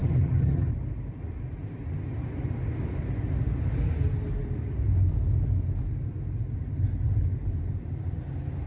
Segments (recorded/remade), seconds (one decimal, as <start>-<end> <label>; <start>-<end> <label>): 0.0-0.7 remade; 0.7-8.7 recorded